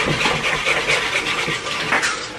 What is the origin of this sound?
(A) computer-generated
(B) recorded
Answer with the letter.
B